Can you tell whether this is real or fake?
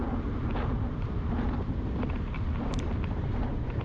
fake